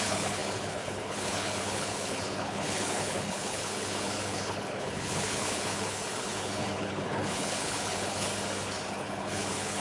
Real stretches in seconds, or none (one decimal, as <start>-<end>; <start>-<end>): 8.3-8.9